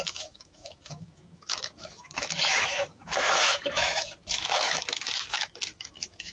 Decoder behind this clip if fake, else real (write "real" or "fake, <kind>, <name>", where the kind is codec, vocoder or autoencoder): fake, autoencoder, DAC-VAE